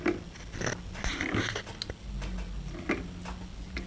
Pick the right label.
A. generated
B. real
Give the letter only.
B